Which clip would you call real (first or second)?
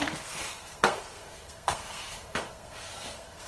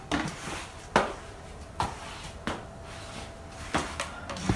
second